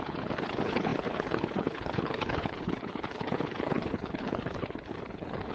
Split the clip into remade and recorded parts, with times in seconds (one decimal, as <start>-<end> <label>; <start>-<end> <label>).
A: 0.0-5.5 remade